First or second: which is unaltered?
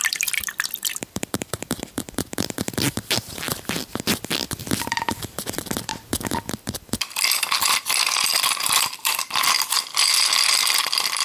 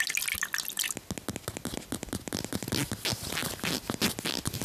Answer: second